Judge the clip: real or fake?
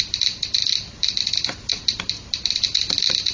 fake